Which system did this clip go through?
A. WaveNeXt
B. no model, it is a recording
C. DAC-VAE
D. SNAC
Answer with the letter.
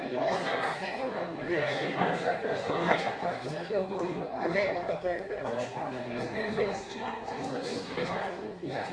D